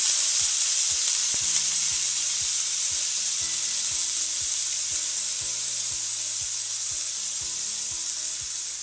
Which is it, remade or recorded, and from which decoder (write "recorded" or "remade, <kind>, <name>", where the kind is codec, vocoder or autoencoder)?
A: recorded